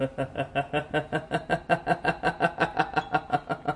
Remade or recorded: recorded